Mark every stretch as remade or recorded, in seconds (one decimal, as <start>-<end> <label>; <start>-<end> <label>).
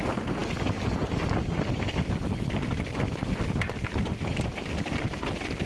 0.0-5.7 recorded